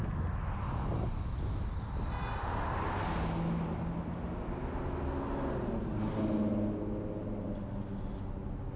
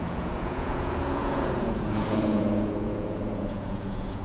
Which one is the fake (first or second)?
second